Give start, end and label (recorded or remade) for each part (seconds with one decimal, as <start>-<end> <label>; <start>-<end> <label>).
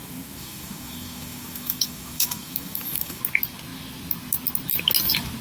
0.0-3.2 remade; 3.2-5.4 recorded